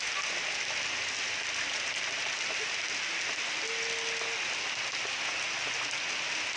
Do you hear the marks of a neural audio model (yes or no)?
no